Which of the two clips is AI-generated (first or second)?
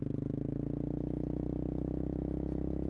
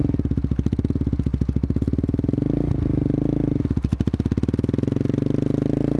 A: first